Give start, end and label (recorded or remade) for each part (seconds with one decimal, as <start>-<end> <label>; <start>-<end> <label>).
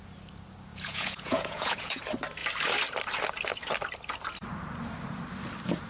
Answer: 0.0-0.7 recorded; 0.7-2.0 remade; 2.0-5.9 recorded